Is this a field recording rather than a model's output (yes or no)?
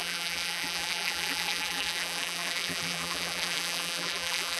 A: no